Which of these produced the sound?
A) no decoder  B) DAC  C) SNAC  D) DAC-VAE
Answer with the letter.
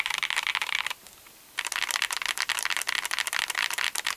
A